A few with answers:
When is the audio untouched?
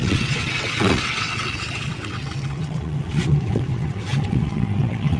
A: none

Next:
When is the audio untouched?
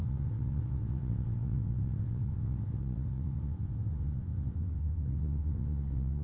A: none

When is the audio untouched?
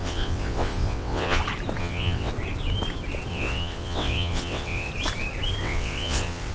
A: 1.4-1.8; 2.3-3.3; 4.9-5.6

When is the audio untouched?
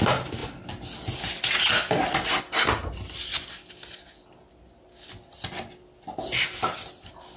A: 0.0-7.4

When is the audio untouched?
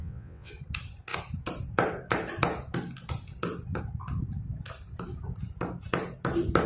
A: 0.5-6.7